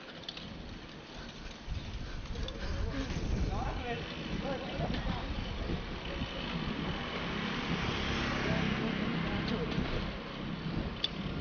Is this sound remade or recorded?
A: recorded